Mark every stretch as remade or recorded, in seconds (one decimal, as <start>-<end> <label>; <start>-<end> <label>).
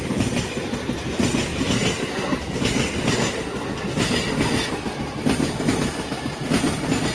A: 0.0-7.1 recorded